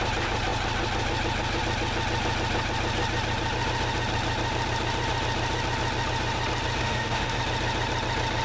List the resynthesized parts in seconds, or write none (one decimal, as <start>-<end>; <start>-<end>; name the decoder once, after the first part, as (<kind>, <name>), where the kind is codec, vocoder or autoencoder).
6.8-7.4 (autoencoder, DAC-VAE)